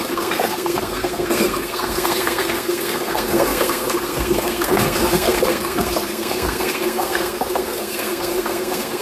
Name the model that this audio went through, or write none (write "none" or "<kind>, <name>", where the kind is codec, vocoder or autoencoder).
codec, SNAC